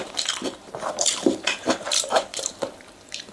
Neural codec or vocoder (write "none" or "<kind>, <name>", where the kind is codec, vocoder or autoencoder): vocoder, BigVGAN v2